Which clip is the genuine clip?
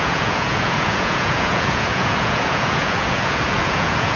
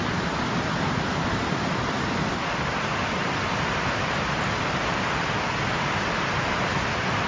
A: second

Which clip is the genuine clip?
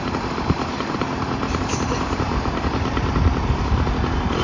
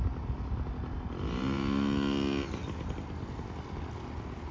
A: second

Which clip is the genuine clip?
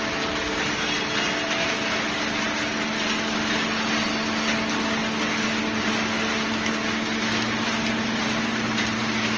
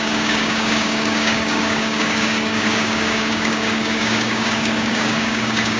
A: first